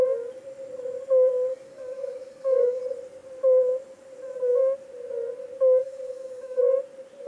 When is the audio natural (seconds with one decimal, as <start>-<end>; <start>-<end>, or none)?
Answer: 0.0-1.5; 2.8-5.8; 6.6-7.3